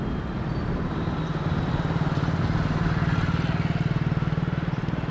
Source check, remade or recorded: recorded